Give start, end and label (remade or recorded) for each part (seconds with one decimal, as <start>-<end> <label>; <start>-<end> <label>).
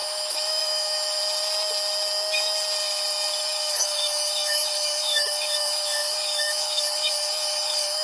0.0-1.2 remade; 1.2-3.4 recorded; 3.4-8.0 remade